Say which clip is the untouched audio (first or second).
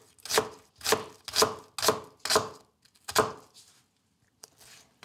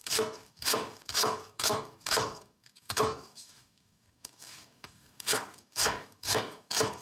first